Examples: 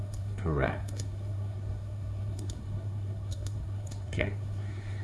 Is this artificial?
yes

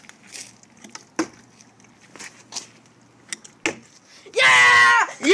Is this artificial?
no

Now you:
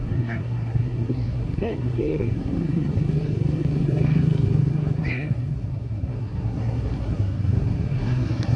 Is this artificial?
yes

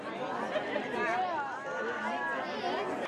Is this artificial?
no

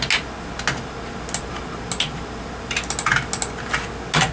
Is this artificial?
no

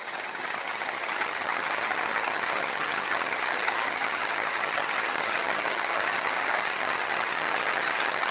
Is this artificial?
yes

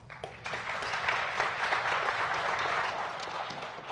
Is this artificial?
yes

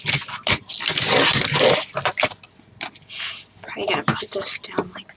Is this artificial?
no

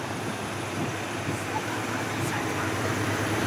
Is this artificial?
no